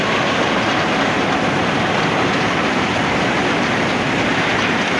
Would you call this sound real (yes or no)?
yes